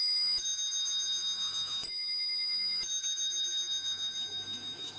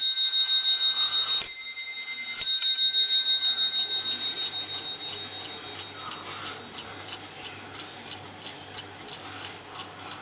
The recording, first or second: second